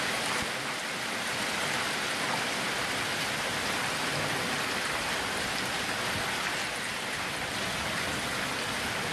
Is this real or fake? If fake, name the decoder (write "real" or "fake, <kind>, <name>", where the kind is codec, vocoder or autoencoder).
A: real